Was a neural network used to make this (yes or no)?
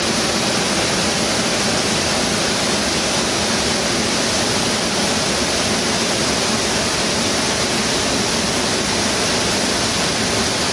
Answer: no